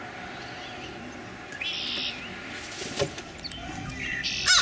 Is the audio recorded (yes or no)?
yes